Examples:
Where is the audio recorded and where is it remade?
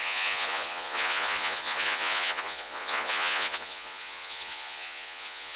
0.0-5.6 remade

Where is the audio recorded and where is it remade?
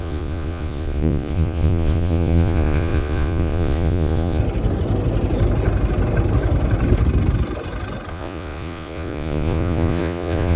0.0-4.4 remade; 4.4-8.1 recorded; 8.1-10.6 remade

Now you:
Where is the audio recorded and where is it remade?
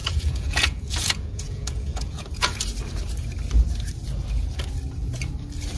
0.0-2.6 remade; 2.6-5.8 recorded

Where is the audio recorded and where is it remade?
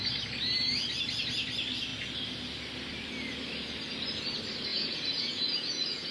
0.0-4.7 recorded; 4.7-6.1 remade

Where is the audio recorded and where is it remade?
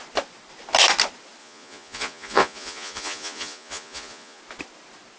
0.0-1.4 recorded; 1.4-4.4 remade; 4.4-5.2 recorded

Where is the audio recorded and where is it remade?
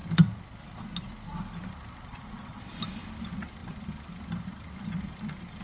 0.0-2.1 recorded; 2.1-2.7 remade; 2.7-5.6 recorded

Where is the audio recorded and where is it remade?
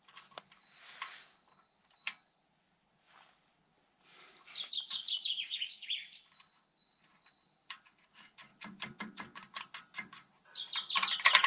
0.0-4.9 recorded; 4.9-6.0 remade; 6.0-11.5 recorded